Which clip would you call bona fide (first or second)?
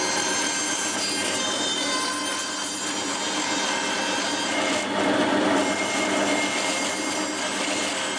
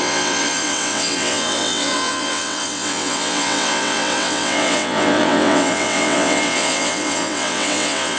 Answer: first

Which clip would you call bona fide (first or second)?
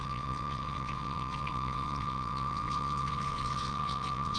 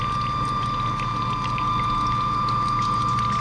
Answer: second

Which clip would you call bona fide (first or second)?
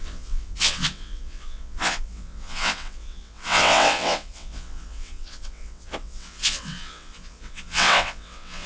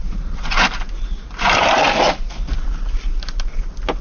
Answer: second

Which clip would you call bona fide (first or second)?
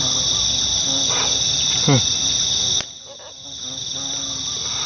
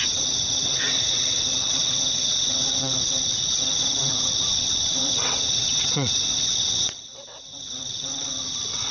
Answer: first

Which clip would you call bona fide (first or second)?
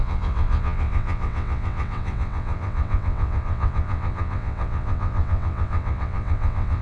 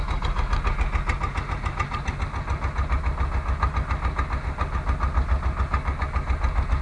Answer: second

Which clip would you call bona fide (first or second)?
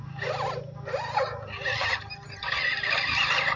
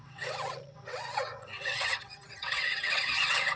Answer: first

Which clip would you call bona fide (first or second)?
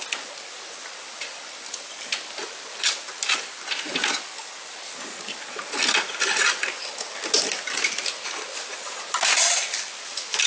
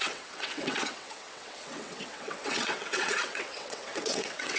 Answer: first